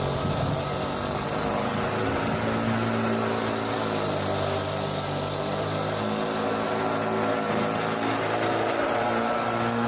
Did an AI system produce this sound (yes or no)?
no